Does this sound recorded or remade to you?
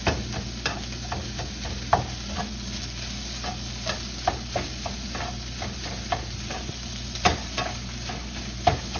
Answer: recorded